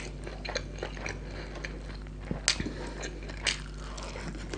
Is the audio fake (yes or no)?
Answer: no